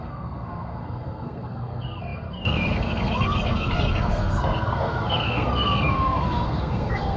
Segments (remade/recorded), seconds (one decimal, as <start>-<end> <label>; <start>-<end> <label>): 0.0-7.2 remade